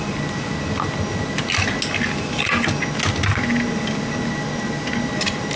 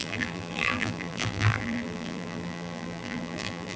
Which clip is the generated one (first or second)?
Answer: second